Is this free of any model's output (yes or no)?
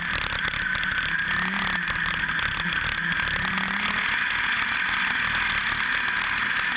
yes